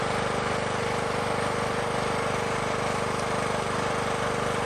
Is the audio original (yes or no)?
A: yes